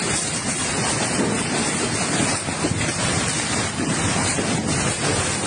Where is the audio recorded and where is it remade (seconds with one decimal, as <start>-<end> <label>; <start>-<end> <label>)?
0.0-5.5 recorded